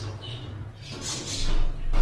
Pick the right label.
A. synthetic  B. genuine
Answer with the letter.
B